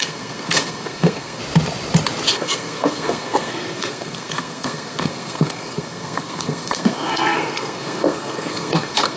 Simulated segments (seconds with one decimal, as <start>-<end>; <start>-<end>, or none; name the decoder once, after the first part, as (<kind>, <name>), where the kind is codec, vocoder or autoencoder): 0.0-1.4 (codec, SNAC); 2.3-9.2